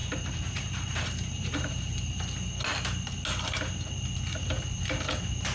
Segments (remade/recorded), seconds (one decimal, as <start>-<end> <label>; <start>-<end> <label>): 0.0-2.2 remade; 2.2-5.5 recorded